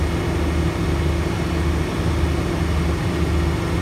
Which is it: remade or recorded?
recorded